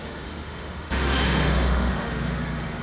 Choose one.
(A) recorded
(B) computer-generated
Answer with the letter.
B